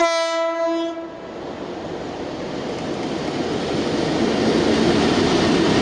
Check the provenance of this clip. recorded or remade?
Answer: recorded